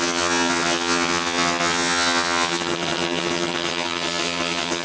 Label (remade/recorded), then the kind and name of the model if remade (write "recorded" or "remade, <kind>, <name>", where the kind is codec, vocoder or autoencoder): remade, vocoder, HiFi-GAN